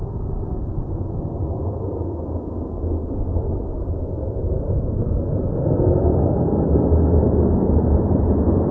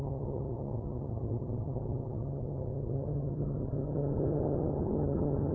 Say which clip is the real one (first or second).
first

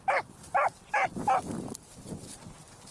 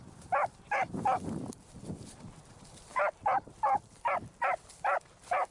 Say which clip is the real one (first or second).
first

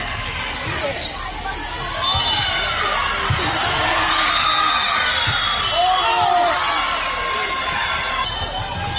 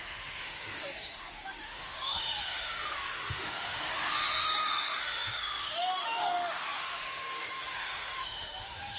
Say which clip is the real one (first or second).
first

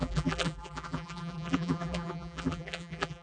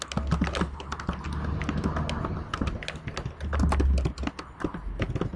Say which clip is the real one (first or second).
second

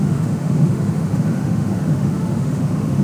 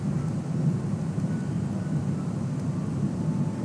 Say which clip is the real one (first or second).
second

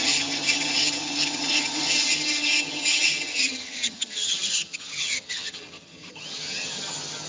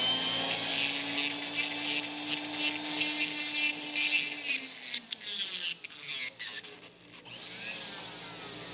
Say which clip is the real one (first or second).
second